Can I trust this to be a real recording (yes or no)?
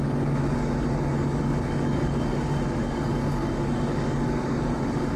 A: no